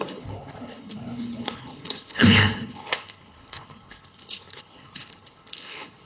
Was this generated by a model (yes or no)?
yes